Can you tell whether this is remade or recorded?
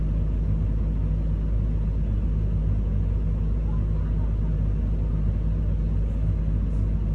recorded